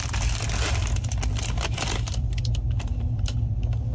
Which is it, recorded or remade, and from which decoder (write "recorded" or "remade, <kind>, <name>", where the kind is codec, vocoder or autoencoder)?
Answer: recorded